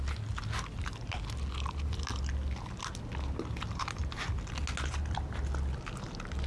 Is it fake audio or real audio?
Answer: real